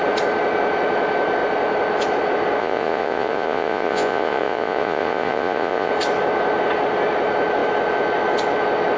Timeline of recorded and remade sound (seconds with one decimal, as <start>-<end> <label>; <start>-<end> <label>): 0.0-2.6 recorded; 2.6-5.9 remade; 5.9-9.0 recorded